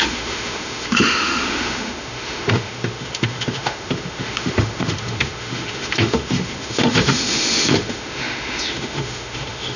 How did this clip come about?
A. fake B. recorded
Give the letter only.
A